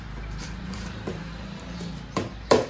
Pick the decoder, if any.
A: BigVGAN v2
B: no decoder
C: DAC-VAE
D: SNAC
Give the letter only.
A